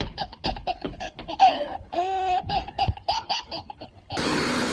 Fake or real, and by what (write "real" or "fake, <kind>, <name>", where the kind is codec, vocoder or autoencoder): fake, codec, HILCodec